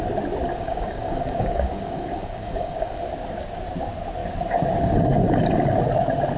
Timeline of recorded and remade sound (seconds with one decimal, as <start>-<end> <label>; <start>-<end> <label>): 0.0-0.5 recorded; 0.5-3.1 remade; 3.1-6.4 recorded